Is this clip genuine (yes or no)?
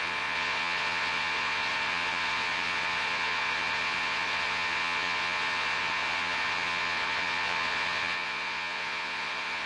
no